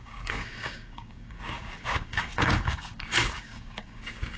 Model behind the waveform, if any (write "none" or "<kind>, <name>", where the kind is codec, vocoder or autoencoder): codec, DAC